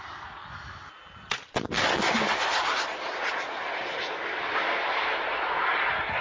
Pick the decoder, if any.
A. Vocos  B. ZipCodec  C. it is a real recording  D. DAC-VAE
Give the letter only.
C